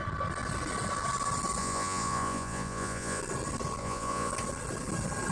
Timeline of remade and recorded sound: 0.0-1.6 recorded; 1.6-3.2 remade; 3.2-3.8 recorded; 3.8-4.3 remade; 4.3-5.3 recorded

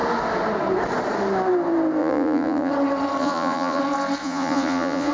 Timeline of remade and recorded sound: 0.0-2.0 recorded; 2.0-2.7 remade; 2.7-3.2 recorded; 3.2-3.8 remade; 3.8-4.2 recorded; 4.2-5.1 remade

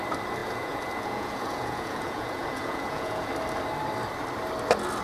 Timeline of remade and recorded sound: 0.0-0.4 recorded; 0.4-3.3 remade; 3.3-5.0 recorded

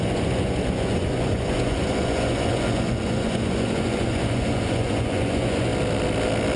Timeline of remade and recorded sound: 0.0-5.7 remade; 5.7-6.6 recorded

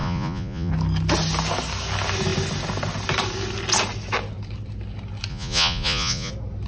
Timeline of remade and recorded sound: 0.0-0.7 remade; 0.7-5.3 recorded; 5.3-6.3 remade; 6.3-6.7 recorded